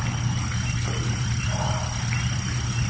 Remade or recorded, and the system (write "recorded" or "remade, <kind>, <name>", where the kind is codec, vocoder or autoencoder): recorded